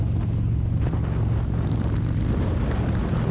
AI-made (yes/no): no